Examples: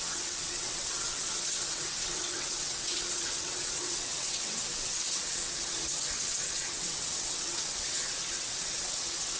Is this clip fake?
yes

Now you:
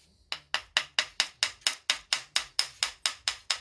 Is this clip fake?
no